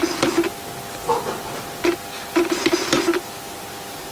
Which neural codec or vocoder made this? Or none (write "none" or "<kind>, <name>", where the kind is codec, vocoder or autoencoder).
none